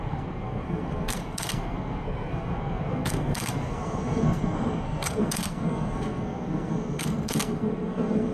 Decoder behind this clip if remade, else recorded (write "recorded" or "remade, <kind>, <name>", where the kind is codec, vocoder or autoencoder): remade, codec, SNAC